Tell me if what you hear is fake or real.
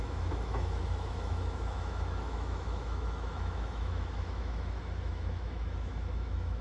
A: fake